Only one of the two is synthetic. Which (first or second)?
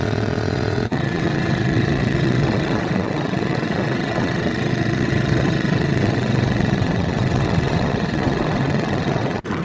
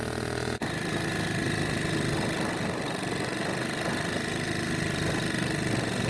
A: first